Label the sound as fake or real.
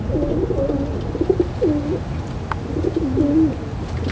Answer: real